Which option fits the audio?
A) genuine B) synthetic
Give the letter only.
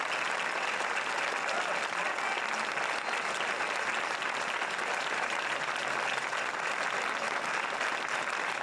A